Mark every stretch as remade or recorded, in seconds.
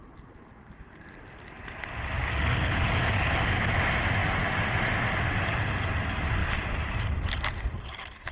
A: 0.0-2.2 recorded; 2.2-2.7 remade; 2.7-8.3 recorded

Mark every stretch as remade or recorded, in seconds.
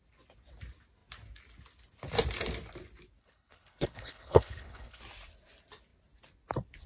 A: 0.0-3.2 recorded; 3.2-5.0 remade; 5.0-6.9 recorded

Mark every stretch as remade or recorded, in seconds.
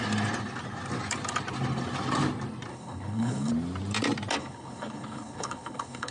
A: 0.0-2.7 recorded; 2.7-3.5 remade; 3.5-4.4 recorded; 4.4-6.1 remade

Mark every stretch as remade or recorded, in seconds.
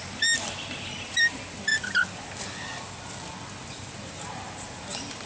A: 0.0-5.3 recorded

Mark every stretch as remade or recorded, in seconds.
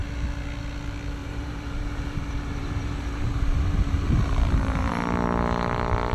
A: 0.0-1.2 recorded; 1.2-4.9 remade; 4.9-6.1 recorded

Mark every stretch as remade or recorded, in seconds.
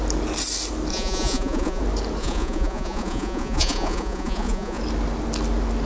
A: 0.0-0.9 recorded; 0.9-1.8 remade; 1.8-2.2 recorded; 2.2-4.8 remade; 4.8-5.9 recorded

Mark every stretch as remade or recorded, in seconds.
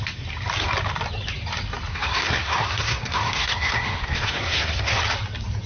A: 0.0-1.9 recorded; 1.9-5.0 remade; 5.0-5.7 recorded